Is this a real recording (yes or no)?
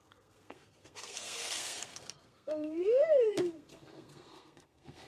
no